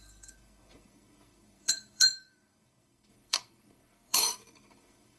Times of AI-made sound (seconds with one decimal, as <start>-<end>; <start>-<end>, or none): 0.0-5.2